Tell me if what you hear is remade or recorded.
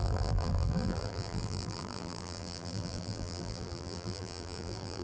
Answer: remade